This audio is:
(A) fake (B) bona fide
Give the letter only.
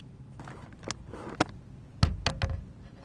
B